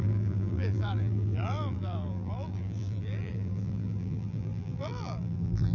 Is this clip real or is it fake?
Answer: fake